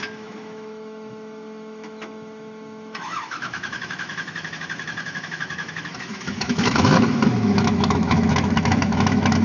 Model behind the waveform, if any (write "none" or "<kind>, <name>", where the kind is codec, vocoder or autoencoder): autoencoder, DAC-VAE